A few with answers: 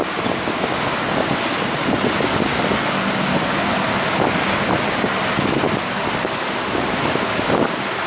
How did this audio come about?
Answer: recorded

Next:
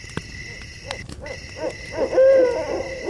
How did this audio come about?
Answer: recorded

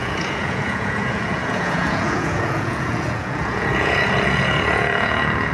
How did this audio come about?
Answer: remade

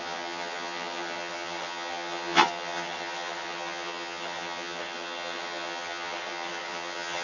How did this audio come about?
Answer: remade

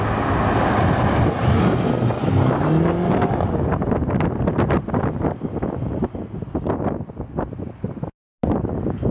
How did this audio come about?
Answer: recorded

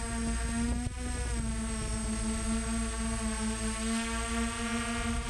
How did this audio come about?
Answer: recorded